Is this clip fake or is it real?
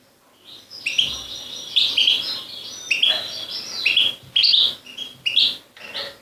real